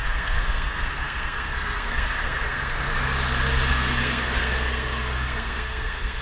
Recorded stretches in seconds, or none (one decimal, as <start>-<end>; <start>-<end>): 2.9-3.7